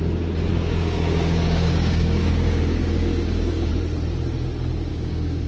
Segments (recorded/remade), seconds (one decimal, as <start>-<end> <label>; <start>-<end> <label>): 0.0-0.5 recorded; 0.5-3.7 remade; 3.7-4.9 recorded; 4.9-5.5 remade